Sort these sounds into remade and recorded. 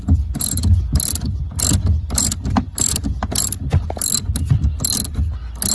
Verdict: recorded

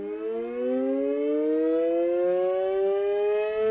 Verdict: recorded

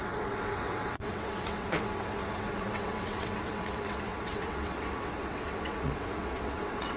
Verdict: remade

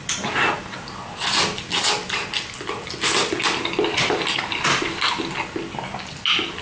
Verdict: recorded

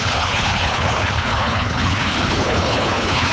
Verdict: remade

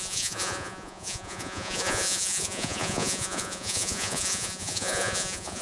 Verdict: remade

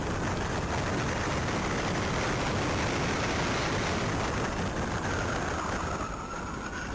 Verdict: recorded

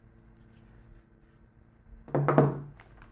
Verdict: recorded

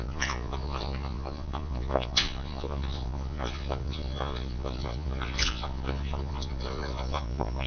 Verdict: remade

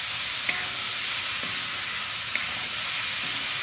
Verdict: recorded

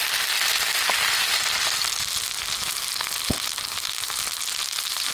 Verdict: recorded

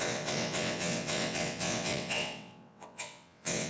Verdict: remade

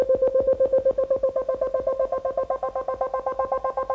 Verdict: recorded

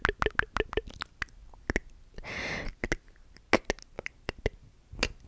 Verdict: recorded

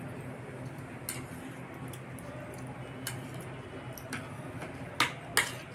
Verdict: recorded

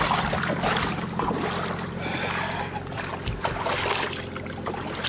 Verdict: recorded